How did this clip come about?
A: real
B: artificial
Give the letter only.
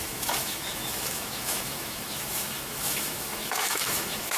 B